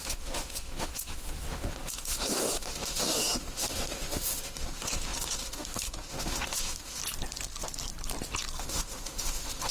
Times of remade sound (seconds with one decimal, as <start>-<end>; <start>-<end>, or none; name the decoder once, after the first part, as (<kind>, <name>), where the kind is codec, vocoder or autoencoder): 0.0-7.0 (autoencoder, DAC-VAE); 8.6-9.7